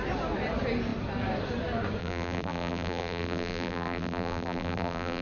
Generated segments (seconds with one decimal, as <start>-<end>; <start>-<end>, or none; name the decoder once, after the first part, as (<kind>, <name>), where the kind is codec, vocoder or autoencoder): 2.0-5.2 (vocoder, BigVGAN v2)